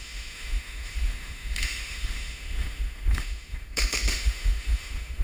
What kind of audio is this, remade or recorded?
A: remade